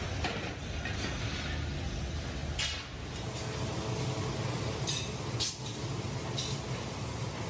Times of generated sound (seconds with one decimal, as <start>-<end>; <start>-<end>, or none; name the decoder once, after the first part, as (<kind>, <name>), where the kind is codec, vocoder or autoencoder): none